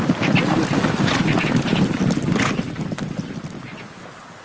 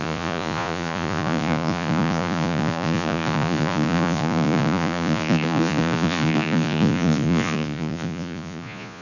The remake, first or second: second